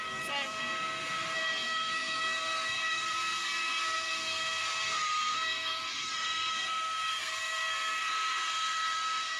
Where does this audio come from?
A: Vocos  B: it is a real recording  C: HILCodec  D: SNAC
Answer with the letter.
D